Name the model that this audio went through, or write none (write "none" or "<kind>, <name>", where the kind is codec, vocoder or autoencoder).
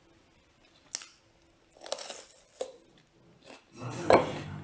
none